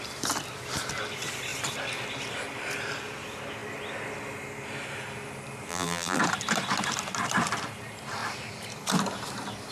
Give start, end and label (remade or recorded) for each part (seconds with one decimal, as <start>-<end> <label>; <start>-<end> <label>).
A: 0.0-5.7 recorded; 5.7-6.2 remade; 6.2-9.7 recorded